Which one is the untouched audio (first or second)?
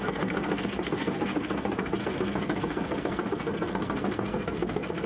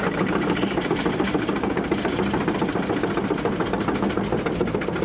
second